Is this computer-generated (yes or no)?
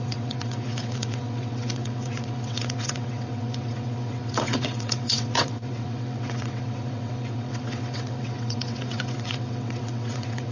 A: yes